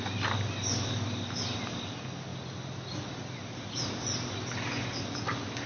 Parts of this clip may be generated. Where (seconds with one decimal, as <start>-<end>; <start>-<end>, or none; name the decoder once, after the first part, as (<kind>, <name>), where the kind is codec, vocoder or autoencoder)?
none